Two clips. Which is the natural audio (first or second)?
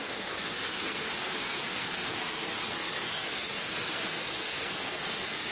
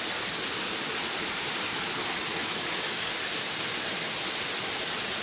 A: second